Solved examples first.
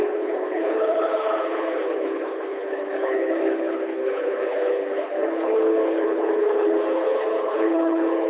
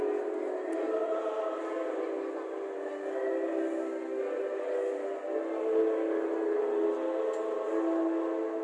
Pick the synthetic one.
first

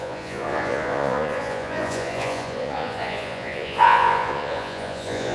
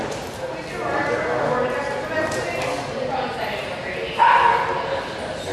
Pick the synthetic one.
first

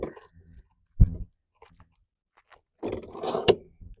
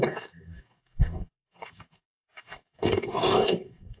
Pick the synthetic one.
second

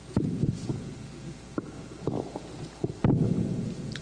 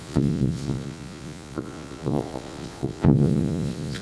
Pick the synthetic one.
second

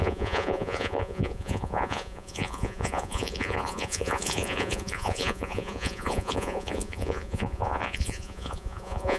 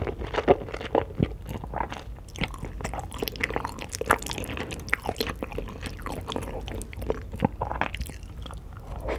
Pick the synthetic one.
first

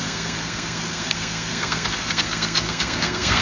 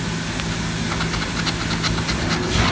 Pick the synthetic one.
first